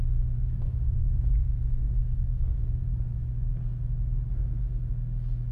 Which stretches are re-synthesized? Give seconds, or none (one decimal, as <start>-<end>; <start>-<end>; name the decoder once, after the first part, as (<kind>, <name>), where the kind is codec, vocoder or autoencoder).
1.4-2.7 (codec, SNAC); 4.3-4.9